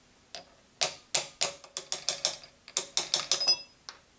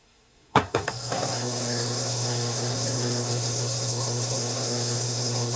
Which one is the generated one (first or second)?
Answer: second